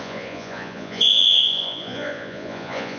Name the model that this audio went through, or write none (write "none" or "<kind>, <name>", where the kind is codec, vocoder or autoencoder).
vocoder, Vocos